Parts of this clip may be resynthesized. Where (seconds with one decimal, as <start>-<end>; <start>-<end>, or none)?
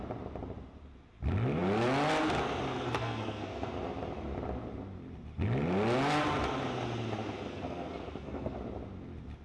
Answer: 2.7-3.7; 7.5-8.6